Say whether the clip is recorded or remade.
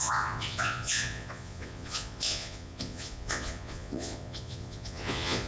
remade